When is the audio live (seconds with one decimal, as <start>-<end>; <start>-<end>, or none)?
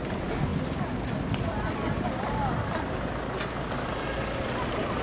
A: 0.0-5.0